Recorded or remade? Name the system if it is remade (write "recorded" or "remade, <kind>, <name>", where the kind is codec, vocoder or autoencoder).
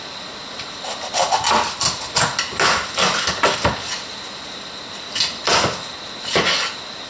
recorded